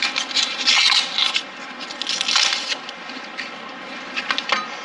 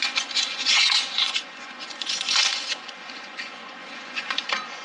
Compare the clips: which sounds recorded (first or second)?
first